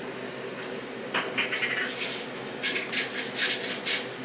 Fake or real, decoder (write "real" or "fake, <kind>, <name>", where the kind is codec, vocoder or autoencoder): real